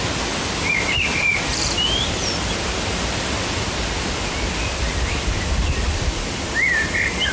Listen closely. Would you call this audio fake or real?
fake